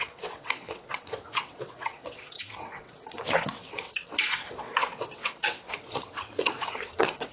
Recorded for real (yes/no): no